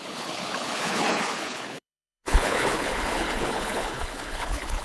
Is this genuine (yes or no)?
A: no